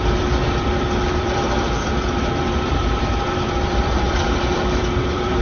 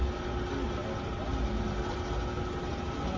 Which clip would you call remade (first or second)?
first